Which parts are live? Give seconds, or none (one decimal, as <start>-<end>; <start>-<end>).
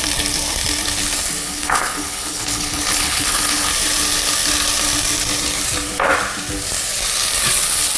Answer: 0.0-1.4; 3.7-8.0